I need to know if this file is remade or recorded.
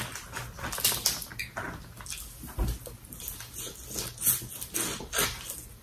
recorded